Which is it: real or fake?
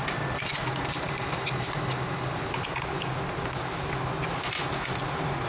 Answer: real